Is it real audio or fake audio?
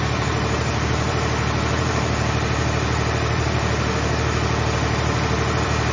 fake